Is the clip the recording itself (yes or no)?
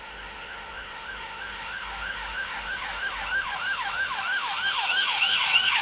no